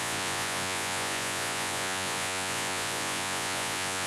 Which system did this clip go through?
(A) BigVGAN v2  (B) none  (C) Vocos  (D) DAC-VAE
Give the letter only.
C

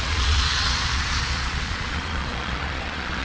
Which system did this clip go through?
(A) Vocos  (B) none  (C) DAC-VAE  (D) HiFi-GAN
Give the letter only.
A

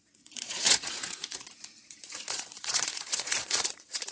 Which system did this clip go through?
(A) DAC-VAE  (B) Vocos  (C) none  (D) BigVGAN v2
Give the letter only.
B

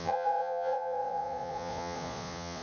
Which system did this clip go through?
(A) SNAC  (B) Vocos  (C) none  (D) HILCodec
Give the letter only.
B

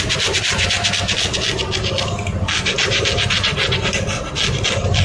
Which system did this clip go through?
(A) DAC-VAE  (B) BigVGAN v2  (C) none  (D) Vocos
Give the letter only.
C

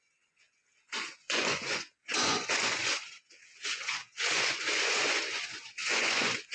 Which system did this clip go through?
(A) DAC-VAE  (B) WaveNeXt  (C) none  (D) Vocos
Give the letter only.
D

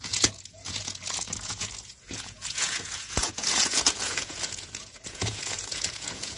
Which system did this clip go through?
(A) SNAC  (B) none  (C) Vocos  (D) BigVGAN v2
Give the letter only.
C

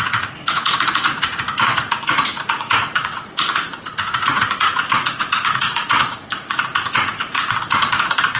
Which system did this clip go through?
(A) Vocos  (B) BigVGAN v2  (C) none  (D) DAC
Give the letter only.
A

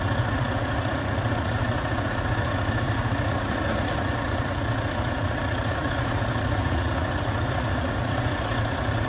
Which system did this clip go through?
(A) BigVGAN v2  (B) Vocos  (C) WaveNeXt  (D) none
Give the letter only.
B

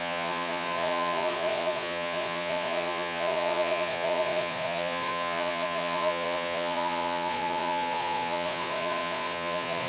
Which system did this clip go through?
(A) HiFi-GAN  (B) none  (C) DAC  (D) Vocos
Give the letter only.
D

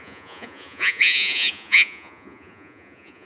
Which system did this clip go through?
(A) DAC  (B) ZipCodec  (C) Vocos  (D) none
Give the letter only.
C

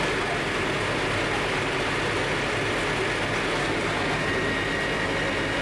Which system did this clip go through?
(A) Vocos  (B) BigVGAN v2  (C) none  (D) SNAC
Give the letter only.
C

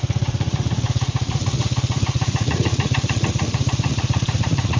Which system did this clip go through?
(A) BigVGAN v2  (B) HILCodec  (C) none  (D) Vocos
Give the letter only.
D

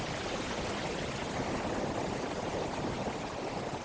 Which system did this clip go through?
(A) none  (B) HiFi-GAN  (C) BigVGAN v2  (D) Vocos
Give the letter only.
A